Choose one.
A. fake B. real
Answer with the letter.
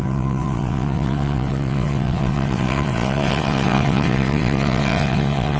A